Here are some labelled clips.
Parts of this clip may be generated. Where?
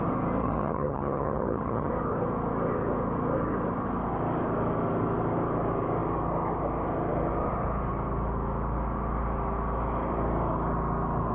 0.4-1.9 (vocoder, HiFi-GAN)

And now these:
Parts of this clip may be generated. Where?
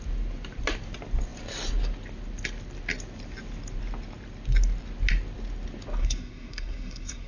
6.0-7.3 (codec, SNAC)